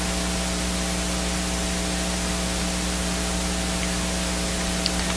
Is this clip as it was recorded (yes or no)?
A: yes